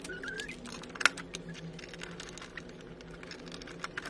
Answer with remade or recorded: recorded